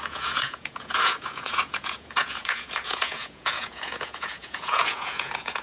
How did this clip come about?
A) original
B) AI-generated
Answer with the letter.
B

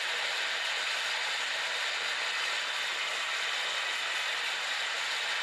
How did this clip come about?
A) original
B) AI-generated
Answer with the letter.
A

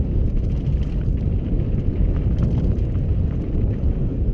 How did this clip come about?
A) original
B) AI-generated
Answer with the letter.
A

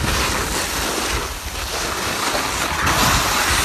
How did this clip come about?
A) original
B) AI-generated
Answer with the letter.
A